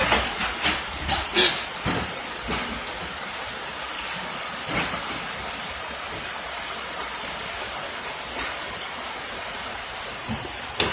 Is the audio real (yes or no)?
yes